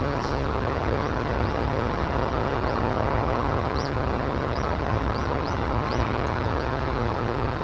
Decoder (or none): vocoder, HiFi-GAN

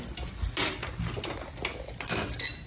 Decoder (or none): none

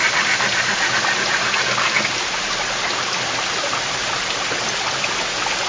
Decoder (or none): none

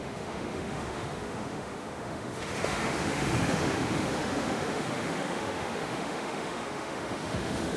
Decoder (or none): autoencoder, DAC-VAE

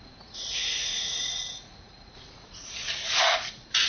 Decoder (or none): vocoder, Vocos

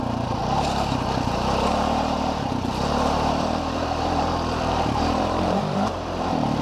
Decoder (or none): vocoder, BigVGAN v2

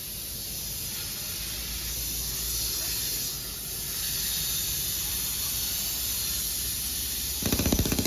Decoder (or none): none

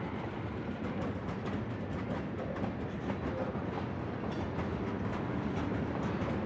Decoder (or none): none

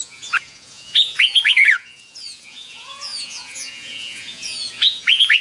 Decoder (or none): vocoder, Vocos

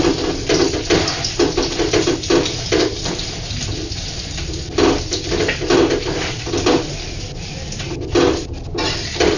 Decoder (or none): none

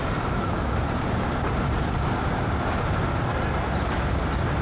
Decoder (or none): none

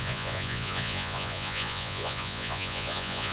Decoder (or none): vocoder, Vocos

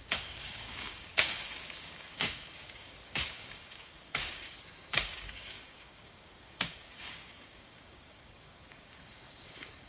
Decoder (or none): codec, DAC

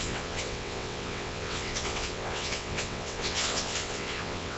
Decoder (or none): vocoder, WaveNeXt